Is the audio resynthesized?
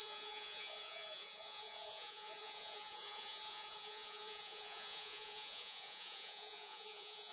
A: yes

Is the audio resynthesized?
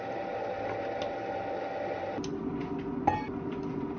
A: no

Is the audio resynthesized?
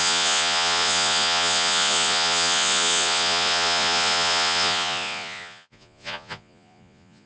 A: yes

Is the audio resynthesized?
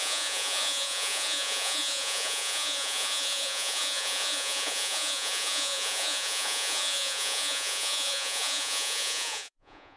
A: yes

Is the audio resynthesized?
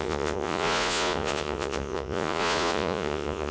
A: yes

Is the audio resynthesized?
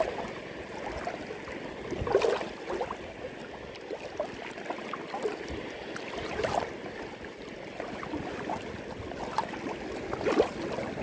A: no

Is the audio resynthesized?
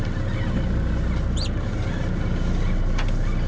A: no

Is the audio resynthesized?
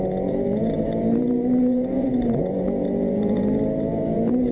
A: yes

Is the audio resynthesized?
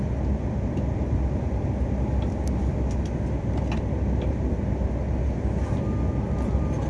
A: no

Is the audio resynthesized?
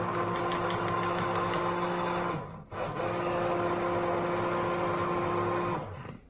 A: no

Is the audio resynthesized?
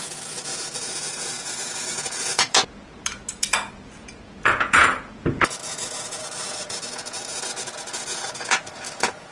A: yes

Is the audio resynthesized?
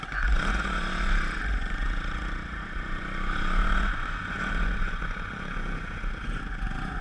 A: yes